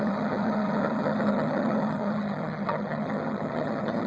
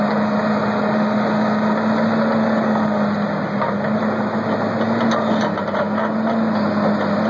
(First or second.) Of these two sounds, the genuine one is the second